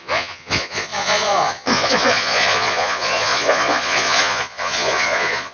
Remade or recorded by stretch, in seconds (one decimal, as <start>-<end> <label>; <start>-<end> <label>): 0.0-5.5 remade